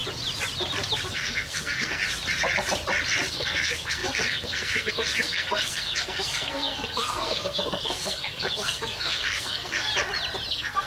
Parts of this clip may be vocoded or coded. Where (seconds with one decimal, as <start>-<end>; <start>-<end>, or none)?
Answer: 1.1-2.0; 3.3-9.9; 10.5-10.9